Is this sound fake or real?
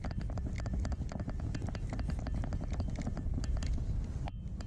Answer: real